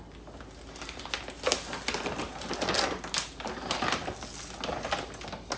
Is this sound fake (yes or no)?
no